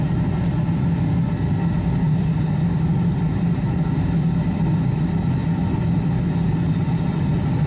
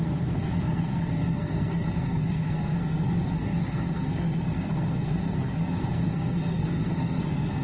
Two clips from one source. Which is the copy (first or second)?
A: second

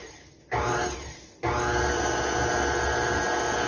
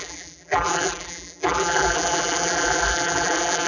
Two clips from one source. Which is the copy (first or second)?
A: second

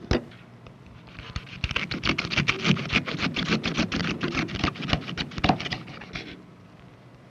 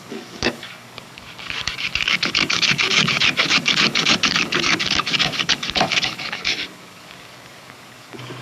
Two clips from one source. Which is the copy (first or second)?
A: second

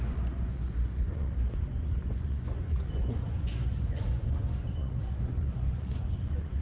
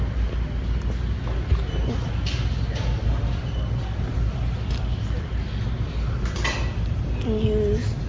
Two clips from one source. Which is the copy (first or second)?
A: first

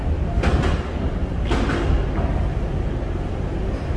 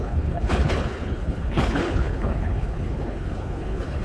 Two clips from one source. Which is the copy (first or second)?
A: second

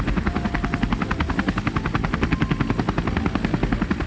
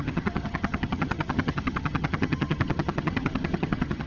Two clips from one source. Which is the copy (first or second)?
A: second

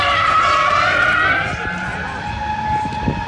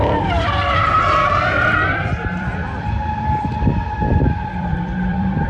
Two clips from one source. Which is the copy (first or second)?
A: second